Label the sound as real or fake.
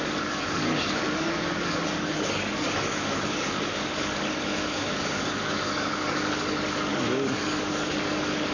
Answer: fake